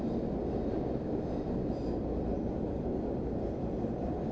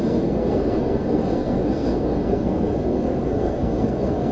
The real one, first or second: first